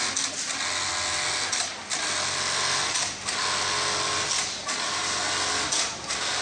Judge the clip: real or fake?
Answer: real